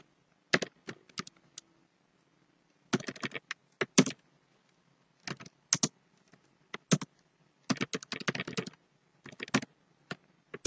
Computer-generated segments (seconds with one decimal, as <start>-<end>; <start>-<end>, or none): none